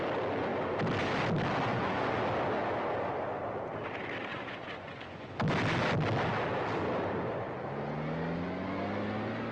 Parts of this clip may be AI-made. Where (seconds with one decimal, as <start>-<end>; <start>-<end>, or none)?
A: 1.7-2.2; 4.3-5.3